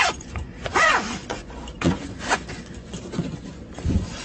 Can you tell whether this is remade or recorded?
remade